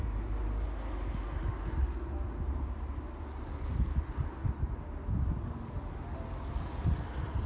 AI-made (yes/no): no